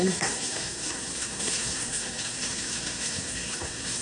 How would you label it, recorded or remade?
remade